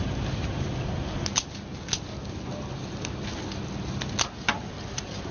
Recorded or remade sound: recorded